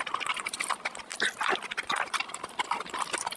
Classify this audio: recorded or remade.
recorded